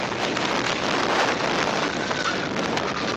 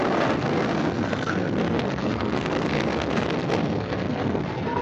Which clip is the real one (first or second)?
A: first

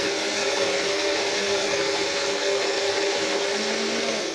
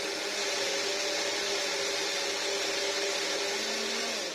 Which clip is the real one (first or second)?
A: second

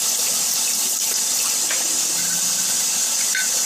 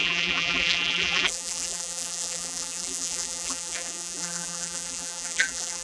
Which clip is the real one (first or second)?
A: first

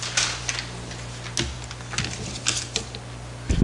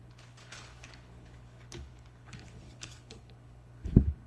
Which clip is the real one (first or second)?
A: first